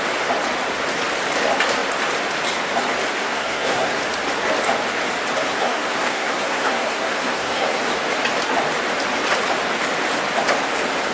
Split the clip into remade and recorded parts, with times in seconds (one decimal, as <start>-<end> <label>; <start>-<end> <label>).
0.0-3.2 recorded; 3.2-4.0 remade; 4.0-5.5 recorded; 5.5-7.8 remade; 7.8-11.1 recorded